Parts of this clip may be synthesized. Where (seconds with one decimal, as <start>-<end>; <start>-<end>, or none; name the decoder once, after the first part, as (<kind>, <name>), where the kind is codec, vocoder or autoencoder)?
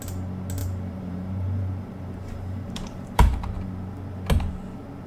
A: 0.6-3.7 (vocoder, BigVGAN v2)